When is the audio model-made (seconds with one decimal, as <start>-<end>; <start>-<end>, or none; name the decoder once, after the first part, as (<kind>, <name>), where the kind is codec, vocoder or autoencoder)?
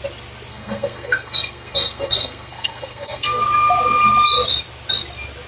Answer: 0.5-3.4 (codec, SNAC)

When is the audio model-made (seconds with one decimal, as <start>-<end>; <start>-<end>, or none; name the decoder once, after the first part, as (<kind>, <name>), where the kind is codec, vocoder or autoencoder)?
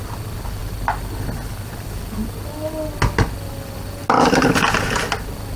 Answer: none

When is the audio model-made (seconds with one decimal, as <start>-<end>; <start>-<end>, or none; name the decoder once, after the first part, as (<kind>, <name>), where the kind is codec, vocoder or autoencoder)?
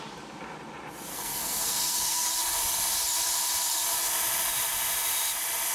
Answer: 1.1-2.3 (codec, SNAC)